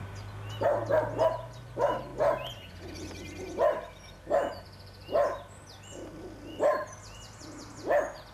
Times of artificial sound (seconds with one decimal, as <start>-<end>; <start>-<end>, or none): none